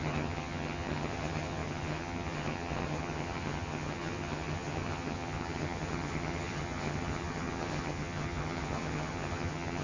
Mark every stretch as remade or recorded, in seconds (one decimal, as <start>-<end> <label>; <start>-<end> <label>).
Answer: 0.0-9.8 remade